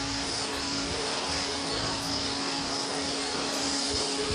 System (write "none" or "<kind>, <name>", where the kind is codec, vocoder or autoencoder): codec, DAC